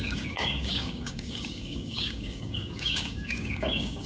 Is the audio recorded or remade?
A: remade